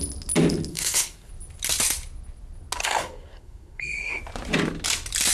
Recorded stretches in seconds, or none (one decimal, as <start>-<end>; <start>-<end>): 0.0-0.7; 1.3-2.8; 4.2-5.3